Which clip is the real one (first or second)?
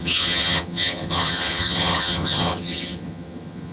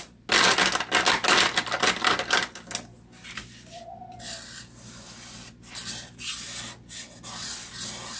second